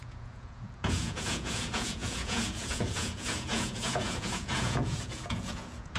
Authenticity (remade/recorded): remade